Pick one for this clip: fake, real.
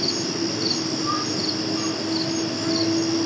real